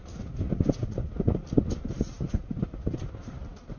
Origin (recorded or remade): recorded